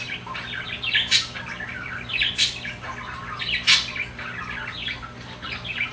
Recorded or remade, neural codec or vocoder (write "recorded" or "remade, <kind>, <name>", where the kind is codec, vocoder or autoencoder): recorded